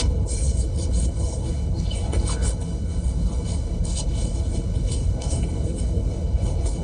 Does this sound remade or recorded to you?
remade